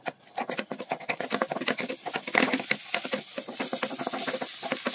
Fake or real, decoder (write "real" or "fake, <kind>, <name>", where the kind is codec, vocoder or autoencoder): real